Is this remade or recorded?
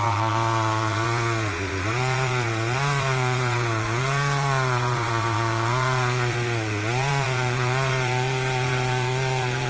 remade